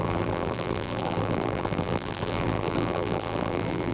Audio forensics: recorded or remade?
remade